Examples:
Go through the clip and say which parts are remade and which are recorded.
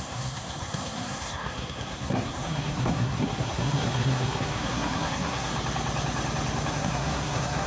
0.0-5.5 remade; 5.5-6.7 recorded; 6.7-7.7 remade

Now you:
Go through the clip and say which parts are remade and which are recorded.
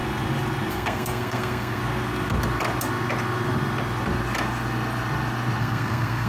0.0-0.7 recorded; 0.7-1.8 remade; 1.8-5.6 recorded; 5.6-6.3 remade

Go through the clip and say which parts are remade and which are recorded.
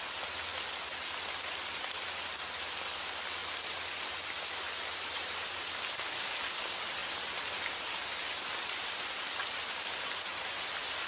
0.0-11.1 recorded